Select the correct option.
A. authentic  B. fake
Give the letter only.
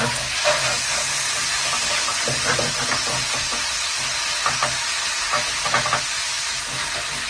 A